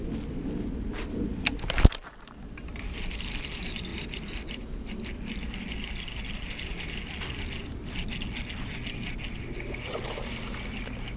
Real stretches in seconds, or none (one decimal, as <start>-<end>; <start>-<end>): 0.0-11.2